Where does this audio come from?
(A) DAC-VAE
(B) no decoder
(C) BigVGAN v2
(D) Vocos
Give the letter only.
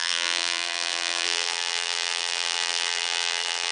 C